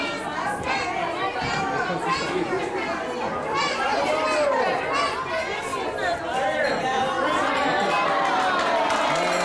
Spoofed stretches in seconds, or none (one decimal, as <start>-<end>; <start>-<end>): 3.5-4.1; 5.7-7.0